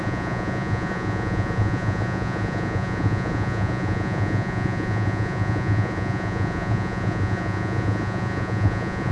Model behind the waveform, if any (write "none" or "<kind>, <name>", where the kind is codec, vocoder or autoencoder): vocoder, Vocos